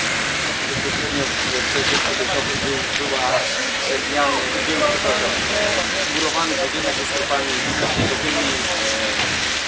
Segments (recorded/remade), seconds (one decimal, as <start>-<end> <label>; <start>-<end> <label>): 0.0-3.3 recorded; 3.3-3.9 remade; 3.9-7.6 recorded; 7.6-8.1 remade; 8.1-9.7 recorded